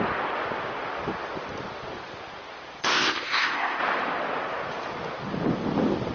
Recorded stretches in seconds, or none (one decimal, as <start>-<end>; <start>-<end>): 0.0-2.8; 3.8-6.1